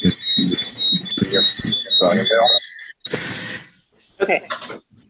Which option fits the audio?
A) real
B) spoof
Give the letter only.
A